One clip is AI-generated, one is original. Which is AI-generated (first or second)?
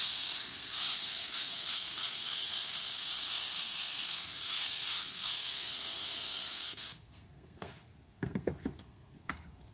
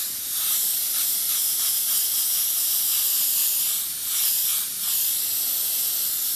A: first